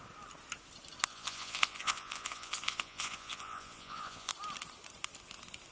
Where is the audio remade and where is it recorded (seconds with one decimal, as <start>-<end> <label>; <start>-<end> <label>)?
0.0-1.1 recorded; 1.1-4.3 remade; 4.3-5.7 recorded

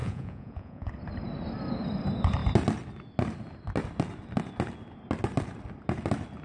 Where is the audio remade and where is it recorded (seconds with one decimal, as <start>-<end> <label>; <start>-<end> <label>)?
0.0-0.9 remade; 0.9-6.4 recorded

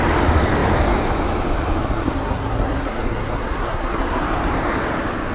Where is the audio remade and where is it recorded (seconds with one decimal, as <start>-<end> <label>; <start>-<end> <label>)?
0.0-1.8 recorded; 1.8-4.2 remade; 4.2-5.3 recorded